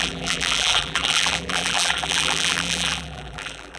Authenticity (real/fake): fake